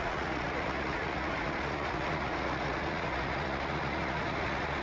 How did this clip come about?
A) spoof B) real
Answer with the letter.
A